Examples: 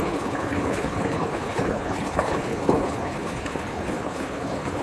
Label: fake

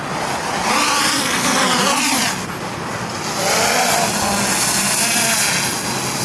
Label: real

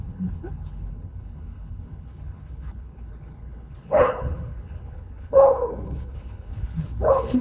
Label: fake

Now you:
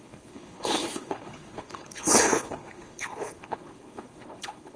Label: fake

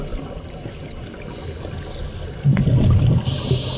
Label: real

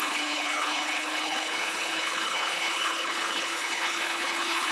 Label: fake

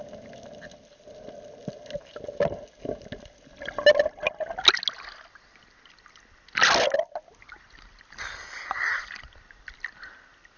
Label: real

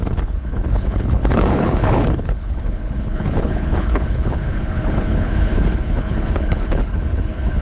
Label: fake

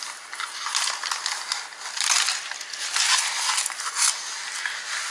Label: real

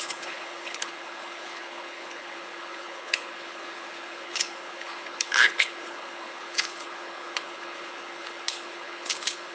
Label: fake